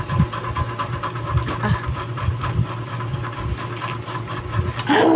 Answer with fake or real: real